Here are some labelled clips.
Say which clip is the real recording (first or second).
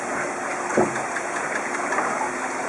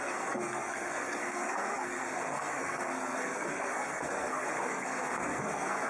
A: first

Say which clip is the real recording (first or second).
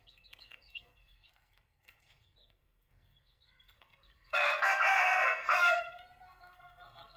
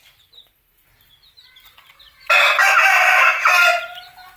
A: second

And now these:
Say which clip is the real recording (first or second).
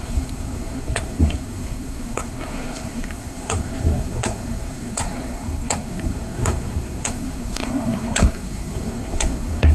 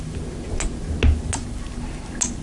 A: second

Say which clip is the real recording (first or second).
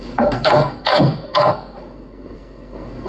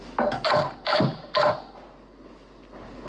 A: second